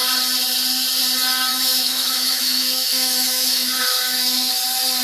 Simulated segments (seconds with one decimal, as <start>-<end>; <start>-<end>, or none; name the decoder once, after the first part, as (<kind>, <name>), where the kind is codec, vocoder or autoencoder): 1.5-4.5 (autoencoder, DAC-VAE)

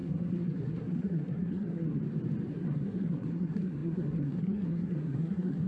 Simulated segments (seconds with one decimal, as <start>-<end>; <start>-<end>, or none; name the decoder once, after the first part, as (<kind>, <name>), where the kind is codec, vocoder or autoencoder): 0.0-2.0 (codec, SNAC); 2.5-5.7

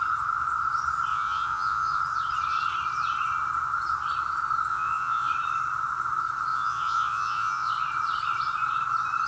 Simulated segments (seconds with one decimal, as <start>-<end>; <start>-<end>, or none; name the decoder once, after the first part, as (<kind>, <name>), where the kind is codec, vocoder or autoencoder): 1.1-2.0 (vocoder, Vocos); 4.7-5.3; 6.5-7.7

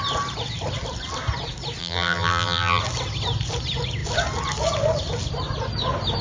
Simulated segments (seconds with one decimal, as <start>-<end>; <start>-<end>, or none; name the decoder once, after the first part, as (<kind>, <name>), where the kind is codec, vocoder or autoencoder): 1.8-2.8 (vocoder, BigVGAN v2)

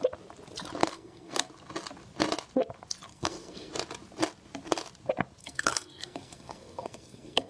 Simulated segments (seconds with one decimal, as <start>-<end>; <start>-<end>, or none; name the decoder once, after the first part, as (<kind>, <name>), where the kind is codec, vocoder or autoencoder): 0.8-1.5 (codec, SNAC); 3.1-3.7; 5.4-7.5

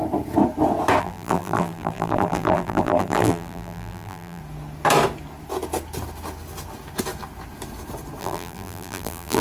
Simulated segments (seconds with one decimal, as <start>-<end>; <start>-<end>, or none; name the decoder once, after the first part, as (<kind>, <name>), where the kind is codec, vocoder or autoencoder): 1.0-4.4 (vocoder, BigVGAN v2); 8.2-9.4

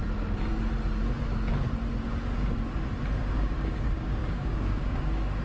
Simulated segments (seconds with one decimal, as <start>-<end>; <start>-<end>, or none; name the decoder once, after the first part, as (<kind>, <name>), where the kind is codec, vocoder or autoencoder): 3.2-5.4 (codec, DAC)